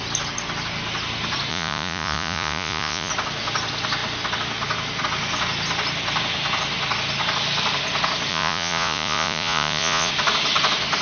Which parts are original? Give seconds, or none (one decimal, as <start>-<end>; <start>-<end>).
0.0-1.5; 3.1-8.3; 10.1-11.0